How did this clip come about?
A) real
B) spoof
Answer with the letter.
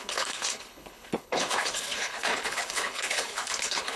B